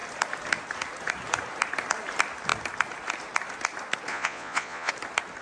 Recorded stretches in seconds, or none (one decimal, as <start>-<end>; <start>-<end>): 0.0-4.1; 4.9-5.4